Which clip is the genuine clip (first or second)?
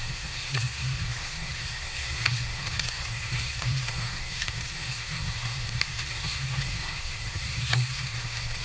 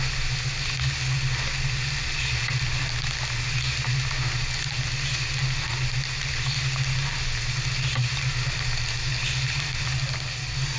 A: second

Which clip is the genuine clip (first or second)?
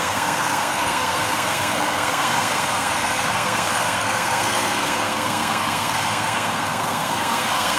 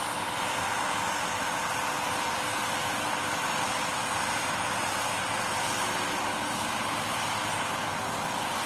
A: second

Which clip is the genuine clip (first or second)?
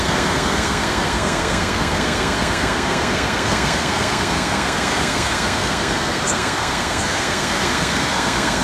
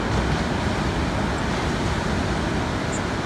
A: second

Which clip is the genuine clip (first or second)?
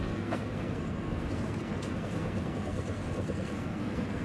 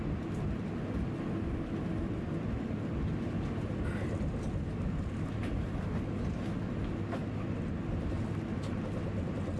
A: second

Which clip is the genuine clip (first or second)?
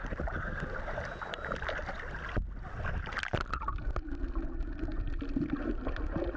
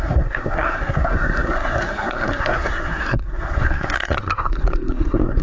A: first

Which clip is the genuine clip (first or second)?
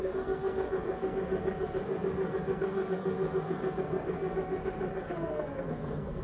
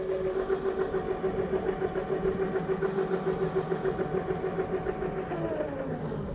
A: second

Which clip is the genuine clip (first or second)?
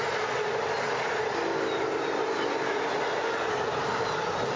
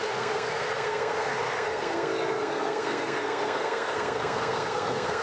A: first